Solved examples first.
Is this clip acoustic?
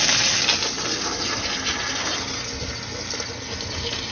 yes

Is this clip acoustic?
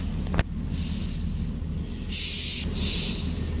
yes